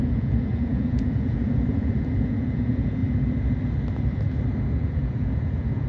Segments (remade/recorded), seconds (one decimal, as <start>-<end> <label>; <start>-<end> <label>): 0.0-3.0 remade; 3.0-4.6 recorded; 4.6-5.9 remade